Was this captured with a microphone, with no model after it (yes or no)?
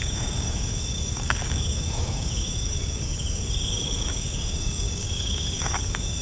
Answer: no